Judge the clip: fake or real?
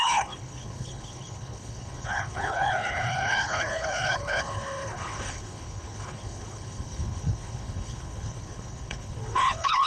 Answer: fake